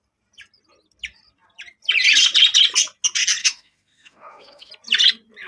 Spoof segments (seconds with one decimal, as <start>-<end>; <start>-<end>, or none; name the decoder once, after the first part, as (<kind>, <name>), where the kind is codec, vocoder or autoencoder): 3.4-4.7 (autoencoder, DAC-VAE)